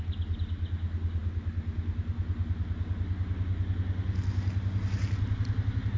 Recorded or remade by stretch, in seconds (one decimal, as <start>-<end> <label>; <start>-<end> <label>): 0.0-6.0 recorded

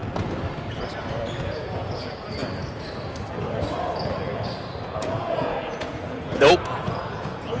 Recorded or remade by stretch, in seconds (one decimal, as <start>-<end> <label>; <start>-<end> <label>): 0.0-1.4 recorded; 1.4-2.4 remade; 2.4-4.8 recorded; 4.8-7.6 remade

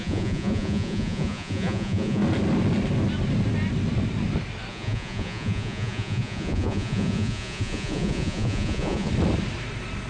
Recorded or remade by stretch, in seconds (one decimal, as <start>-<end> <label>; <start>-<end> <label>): 0.0-2.2 remade; 2.2-4.7 recorded; 4.7-9.1 remade; 9.1-10.1 recorded

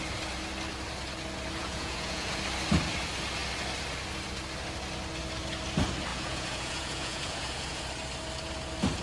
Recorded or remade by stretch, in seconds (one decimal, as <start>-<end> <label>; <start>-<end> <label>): 0.0-1.6 recorded; 1.6-2.4 remade; 2.4-6.1 recorded; 6.1-7.8 remade; 7.8-9.0 recorded

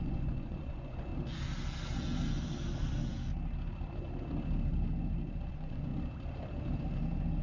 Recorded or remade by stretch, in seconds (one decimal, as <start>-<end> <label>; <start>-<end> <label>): 0.0-1.1 remade; 1.1-5.5 recorded; 5.5-5.9 remade; 5.9-7.4 recorded

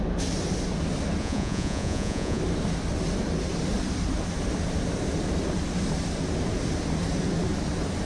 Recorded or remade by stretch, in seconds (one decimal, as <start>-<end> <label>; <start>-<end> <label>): 0.0-1.2 recorded; 1.2-2.4 remade; 2.4-8.0 recorded

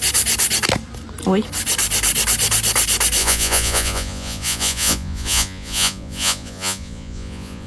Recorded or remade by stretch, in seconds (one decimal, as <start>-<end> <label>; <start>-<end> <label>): 0.0-3.2 recorded; 3.2-7.7 remade